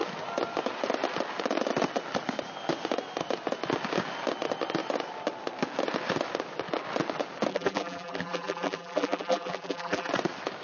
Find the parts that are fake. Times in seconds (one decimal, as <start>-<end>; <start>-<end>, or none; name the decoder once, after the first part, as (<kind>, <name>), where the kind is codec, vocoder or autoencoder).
7.5-10.1 (vocoder, BigVGAN v2)